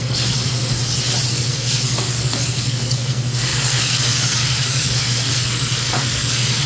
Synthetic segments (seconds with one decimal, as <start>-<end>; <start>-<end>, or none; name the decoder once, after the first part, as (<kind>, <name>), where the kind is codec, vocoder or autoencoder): 0.0-0.8 (codec, SNAC); 1.3-6.7